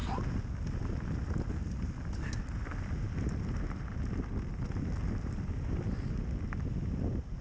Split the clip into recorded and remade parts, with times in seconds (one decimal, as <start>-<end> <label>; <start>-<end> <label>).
0.0-7.4 recorded